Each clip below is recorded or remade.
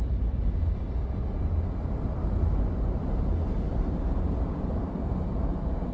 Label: recorded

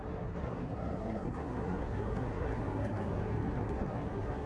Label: remade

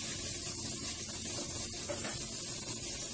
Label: recorded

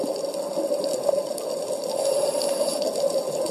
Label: recorded